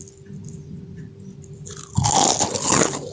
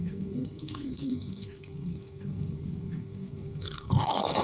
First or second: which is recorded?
first